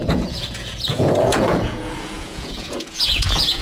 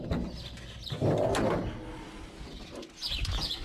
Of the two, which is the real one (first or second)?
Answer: second